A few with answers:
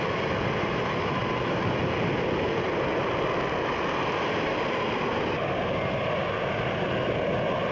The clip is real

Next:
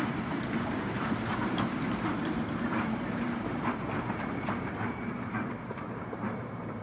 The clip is fake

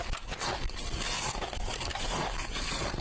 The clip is real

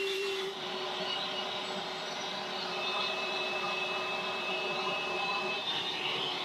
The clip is fake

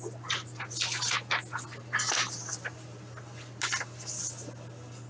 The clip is real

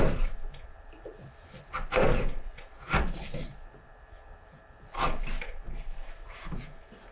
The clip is fake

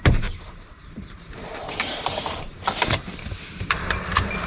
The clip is fake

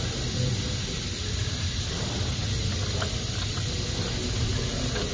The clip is real